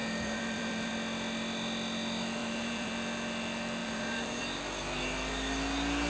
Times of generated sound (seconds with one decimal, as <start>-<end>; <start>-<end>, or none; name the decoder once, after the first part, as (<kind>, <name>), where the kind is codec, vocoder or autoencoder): 0.0-0.9 (vocoder, BigVGAN v2); 2.4-2.9; 3.8-4.4